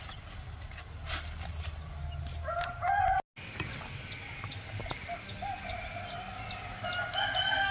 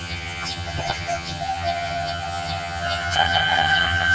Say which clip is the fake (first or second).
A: second